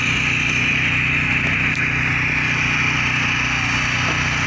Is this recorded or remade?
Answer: recorded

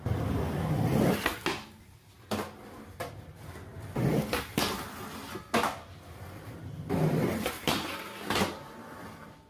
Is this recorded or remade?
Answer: recorded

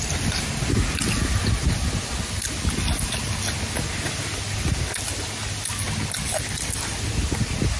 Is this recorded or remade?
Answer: recorded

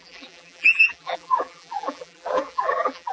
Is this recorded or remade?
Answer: remade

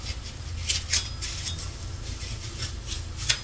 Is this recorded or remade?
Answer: recorded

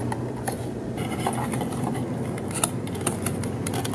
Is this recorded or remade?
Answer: recorded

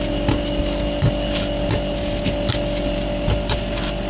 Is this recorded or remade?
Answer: recorded